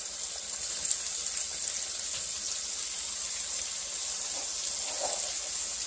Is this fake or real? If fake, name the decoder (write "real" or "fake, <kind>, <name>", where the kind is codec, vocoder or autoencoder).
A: real